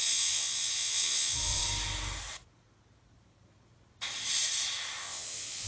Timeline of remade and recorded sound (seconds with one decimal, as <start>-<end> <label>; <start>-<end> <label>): 0.0-1.6 remade; 1.6-5.0 recorded; 5.0-5.7 remade